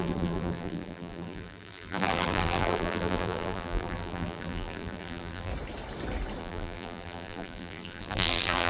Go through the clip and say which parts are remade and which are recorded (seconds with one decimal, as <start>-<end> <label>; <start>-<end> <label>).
0.0-5.5 remade; 5.5-6.4 recorded; 6.4-8.7 remade